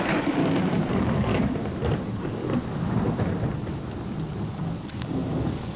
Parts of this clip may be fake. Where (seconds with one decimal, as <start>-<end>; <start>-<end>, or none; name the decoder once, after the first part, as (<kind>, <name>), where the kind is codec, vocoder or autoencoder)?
0.0-0.4 (codec, DAC); 0.9-1.3; 2.0-2.4; 4.4-5.8